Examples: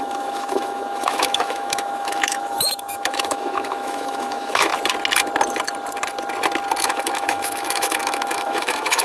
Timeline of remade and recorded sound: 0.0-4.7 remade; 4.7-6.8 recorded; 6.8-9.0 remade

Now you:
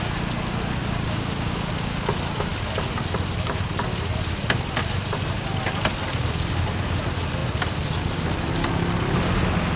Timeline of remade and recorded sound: 0.0-0.8 recorded; 0.8-1.7 remade; 1.7-9.8 recorded

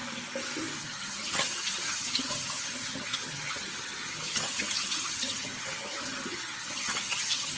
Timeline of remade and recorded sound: 0.0-0.8 recorded; 0.8-7.6 remade